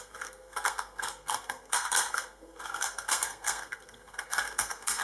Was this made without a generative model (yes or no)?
no